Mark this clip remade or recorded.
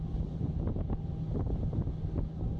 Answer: recorded